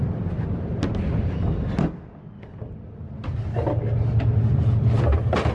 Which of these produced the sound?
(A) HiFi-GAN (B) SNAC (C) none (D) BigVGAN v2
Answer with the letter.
C